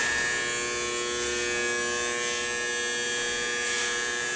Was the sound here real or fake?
real